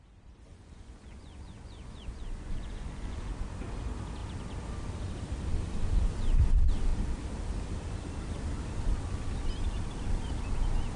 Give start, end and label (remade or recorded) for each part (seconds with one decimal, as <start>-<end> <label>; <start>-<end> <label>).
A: 0.0-0.5 recorded; 0.5-3.3 remade; 3.3-11.0 recorded